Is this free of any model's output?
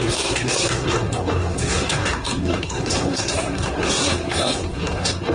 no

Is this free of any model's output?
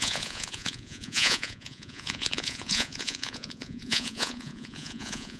no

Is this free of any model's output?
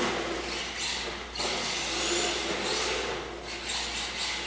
yes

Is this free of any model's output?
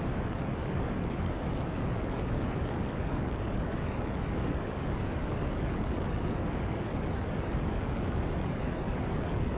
no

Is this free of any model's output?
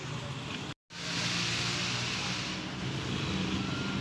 yes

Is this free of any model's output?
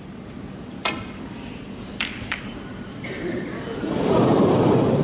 no